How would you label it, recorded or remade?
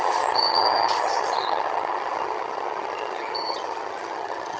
remade